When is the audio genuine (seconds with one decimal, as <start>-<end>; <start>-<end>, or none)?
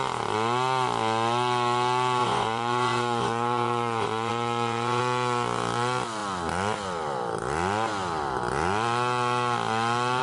0.0-2.2; 5.0-10.2